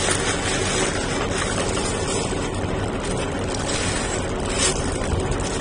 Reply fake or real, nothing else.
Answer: real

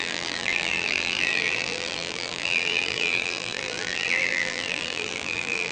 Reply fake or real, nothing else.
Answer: fake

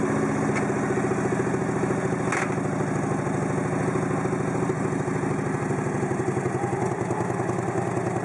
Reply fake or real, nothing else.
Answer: real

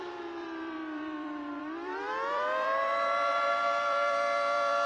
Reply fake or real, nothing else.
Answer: fake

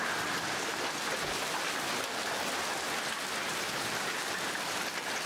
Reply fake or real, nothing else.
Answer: real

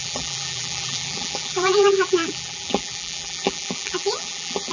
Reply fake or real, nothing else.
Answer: fake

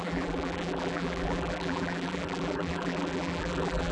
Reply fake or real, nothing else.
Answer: fake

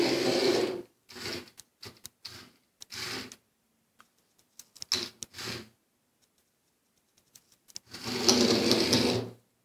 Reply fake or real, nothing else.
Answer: real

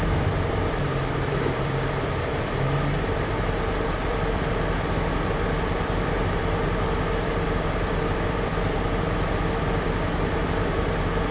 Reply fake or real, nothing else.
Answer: fake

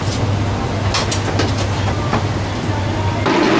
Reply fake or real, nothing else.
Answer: real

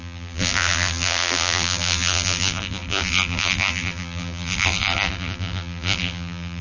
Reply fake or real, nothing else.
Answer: fake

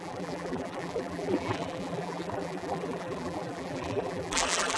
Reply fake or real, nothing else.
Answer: fake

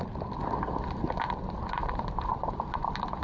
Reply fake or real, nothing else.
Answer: fake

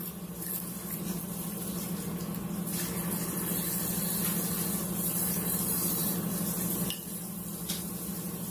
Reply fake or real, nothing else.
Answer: real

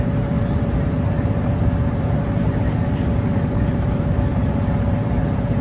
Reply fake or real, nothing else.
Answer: fake